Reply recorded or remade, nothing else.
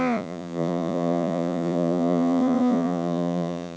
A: remade